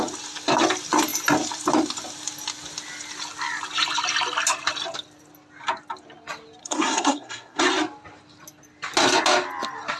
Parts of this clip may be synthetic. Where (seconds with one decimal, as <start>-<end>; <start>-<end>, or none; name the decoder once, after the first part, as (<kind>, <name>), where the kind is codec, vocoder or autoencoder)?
6.6-7.6 (codec, SNAC)